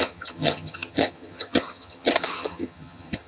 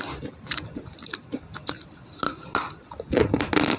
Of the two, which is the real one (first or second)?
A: second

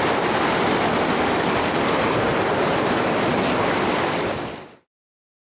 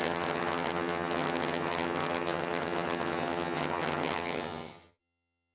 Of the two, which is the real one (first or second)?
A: first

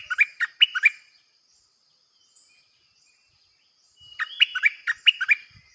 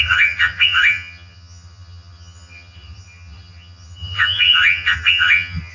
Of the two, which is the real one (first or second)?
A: first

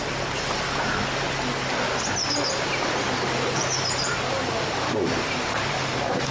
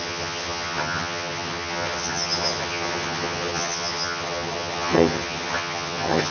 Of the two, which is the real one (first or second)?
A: first